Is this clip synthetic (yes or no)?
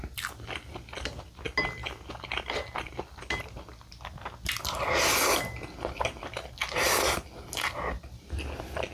no